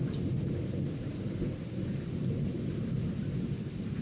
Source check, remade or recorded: recorded